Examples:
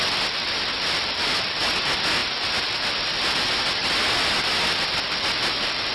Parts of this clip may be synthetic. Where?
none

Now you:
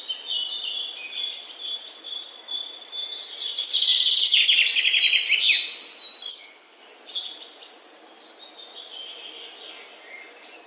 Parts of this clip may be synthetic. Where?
6.3-6.8

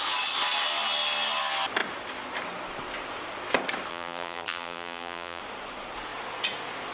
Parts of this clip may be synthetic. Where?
3.9-5.4

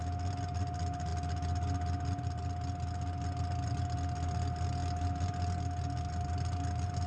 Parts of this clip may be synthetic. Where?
none

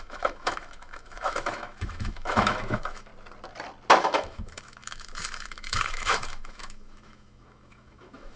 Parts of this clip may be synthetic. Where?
0.0-3.1; 4.0-8.4

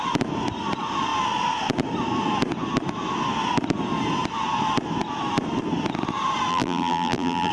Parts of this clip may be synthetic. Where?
6.5-7.5

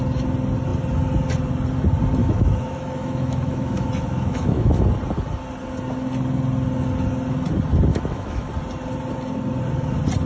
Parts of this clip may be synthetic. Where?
2.2-4.8; 7.9-8.5

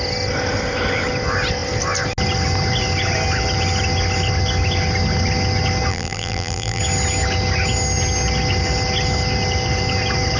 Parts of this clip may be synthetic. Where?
5.9-6.8